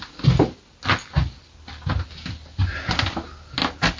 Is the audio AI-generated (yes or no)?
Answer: no